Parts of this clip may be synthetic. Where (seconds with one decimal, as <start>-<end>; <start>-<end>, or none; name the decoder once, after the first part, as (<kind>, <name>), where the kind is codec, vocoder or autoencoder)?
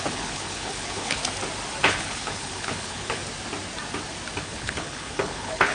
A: 0.0-1.2 (codec, HILCodec); 1.8-3.2; 4.4-5.7